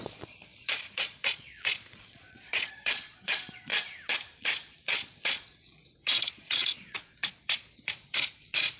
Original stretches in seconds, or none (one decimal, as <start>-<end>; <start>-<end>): 3.7-4.4

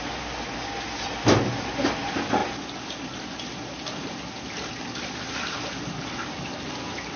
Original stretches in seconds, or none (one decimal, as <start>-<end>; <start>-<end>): 0.0-7.2

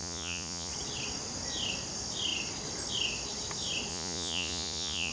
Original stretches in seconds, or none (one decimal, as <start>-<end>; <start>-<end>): 0.7-3.9

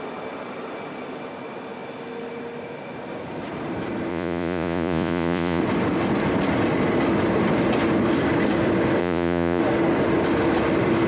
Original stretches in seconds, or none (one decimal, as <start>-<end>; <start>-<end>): 0.0-4.1; 5.6-9.0; 9.6-11.1

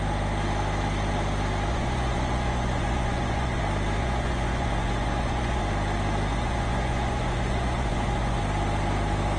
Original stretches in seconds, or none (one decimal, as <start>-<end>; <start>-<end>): 0.0-1.7; 3.6-4.0; 5.6-6.3; 8.4-9.4

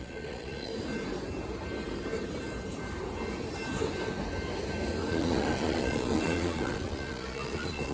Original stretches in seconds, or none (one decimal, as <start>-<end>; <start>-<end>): 0.7-5.1

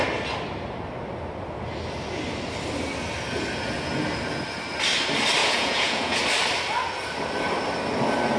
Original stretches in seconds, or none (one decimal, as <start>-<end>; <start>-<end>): 0.0-5.4; 6.2-8.4